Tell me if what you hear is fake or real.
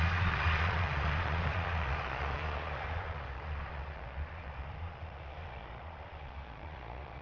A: fake